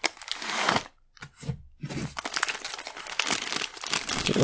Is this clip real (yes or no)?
yes